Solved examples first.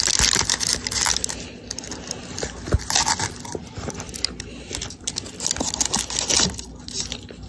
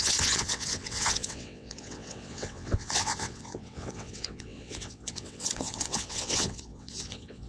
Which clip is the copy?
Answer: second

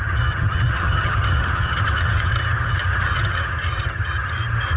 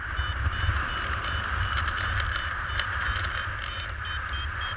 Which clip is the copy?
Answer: first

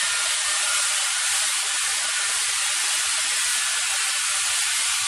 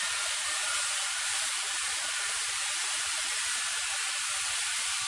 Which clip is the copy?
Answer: second